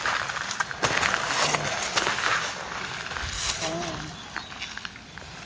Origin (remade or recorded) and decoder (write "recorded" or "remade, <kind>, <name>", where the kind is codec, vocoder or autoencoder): recorded